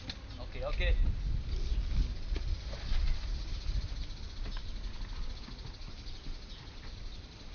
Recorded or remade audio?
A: recorded